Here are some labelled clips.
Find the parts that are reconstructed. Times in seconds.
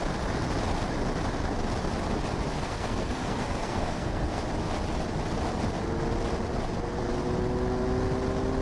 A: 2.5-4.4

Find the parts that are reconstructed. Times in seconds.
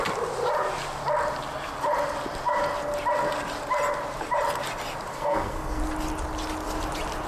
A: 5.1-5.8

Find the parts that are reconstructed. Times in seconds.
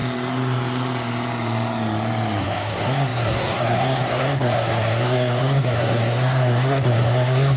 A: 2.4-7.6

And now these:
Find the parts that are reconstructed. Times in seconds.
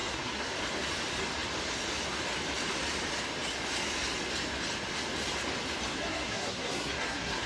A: 0.0-0.5; 6.0-7.5